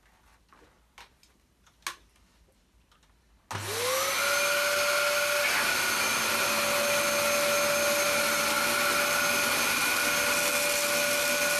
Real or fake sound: real